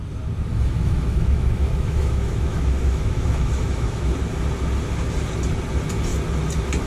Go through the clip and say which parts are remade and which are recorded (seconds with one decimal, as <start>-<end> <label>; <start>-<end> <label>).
0.0-0.5 recorded; 0.5-4.1 remade; 4.1-6.9 recorded